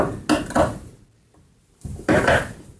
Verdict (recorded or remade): recorded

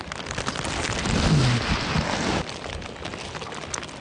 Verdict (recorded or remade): recorded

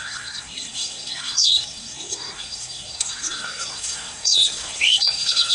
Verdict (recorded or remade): remade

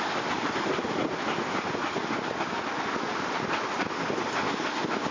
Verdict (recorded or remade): recorded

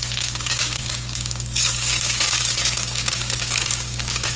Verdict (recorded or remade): remade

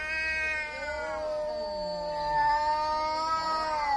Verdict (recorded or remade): recorded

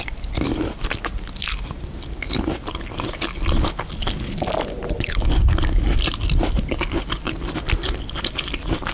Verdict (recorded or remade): recorded